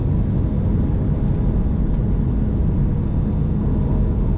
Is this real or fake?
real